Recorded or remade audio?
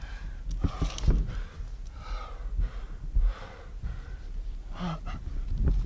recorded